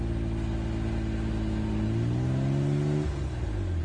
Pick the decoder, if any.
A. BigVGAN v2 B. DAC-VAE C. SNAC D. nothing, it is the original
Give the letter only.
D